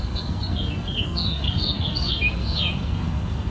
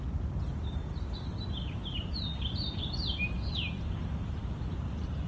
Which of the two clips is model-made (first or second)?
first